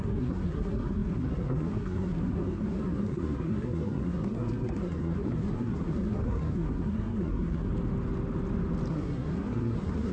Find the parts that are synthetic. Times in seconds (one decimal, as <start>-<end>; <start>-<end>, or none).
0.0-7.7; 8.9-10.1